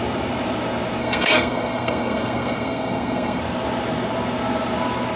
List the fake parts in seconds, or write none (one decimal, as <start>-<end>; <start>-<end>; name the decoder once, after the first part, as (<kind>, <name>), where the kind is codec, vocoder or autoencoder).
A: 1.0-3.4 (codec, SNAC)